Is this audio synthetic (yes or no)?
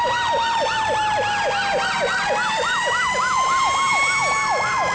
yes